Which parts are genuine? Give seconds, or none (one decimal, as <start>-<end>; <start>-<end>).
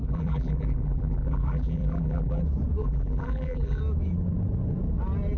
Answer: 2.4-2.8; 3.8-5.4